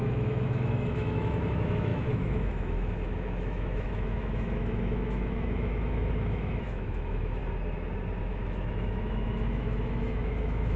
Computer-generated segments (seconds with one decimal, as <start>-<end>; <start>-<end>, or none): 0.0-7.4; 8.2-10.8